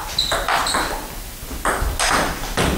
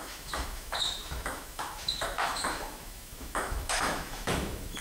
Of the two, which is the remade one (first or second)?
second